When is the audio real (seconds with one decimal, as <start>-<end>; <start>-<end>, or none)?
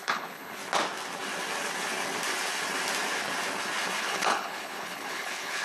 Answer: 0.6-4.0